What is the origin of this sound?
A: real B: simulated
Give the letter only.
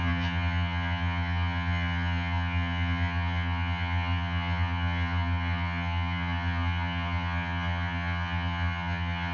B